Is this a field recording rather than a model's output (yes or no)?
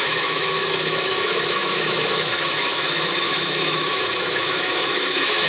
no